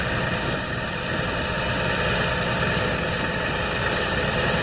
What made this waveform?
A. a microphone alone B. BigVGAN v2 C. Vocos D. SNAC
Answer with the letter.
A